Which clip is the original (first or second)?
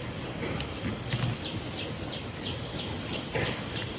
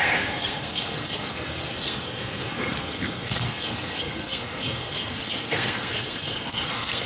first